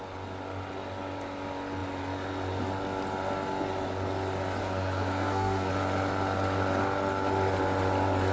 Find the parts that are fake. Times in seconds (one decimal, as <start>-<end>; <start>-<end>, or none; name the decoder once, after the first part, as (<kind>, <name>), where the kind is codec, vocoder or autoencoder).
4.6-5.7 (codec, SNAC)

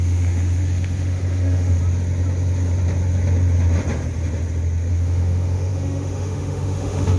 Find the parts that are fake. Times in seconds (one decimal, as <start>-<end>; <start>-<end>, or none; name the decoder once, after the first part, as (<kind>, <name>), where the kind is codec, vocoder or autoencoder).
0.0-1.8 (autoencoder, DAC-VAE); 4.9-7.2

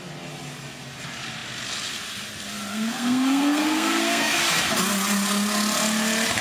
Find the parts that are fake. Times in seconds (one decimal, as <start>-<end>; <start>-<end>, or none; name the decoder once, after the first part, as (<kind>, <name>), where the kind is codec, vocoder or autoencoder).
2.7-4.4 (codec, SNAC)

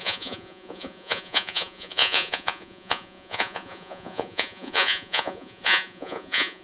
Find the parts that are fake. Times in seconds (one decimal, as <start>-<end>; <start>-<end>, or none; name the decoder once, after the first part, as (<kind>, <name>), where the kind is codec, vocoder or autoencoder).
0.0-6.6 (vocoder, Vocos)